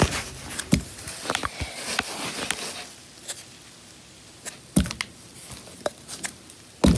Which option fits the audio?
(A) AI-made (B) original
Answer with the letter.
B